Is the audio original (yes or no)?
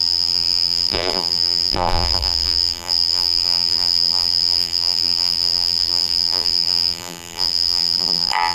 no